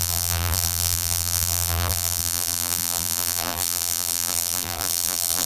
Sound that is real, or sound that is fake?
fake